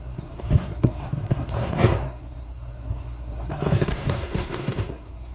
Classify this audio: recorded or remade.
remade